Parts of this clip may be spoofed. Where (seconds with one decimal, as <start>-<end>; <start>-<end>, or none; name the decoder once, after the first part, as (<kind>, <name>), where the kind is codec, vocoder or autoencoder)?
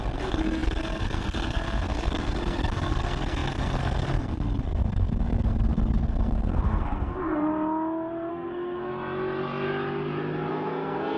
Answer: 0.0-7.5 (codec, SNAC); 8.3-8.9; 10.5-11.2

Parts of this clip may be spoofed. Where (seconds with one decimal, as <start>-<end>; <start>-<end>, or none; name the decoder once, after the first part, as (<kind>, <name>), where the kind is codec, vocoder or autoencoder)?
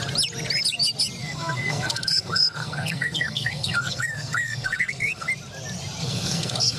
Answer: 1.2-5.3 (codec, SNAC); 6.0-6.8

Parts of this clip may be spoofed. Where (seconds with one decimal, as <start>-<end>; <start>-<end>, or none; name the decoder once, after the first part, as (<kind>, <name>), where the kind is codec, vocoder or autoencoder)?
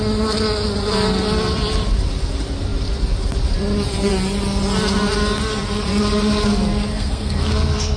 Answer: 6.9-8.0 (codec, SNAC)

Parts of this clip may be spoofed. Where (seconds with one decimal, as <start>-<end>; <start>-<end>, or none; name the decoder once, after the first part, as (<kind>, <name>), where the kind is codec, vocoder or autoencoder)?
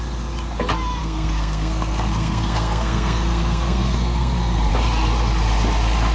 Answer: 1.0-4.7 (codec, SNAC)